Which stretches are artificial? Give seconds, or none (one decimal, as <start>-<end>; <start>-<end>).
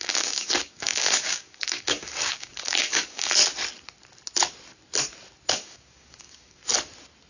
0.0-3.4; 5.5-6.6